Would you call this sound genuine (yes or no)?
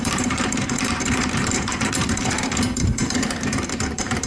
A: no